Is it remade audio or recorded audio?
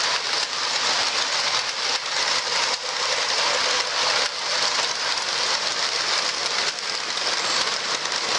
recorded